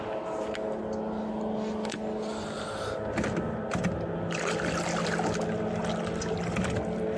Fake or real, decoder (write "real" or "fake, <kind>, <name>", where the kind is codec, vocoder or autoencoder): real